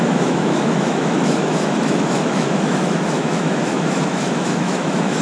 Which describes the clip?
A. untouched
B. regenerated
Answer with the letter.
B